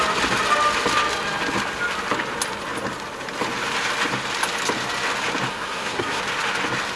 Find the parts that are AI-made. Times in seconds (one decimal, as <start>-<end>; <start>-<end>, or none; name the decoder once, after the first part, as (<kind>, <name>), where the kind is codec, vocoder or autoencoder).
5.5-6.2 (codec, SNAC)